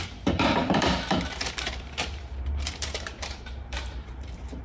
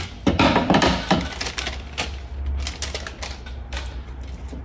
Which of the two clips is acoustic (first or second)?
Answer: second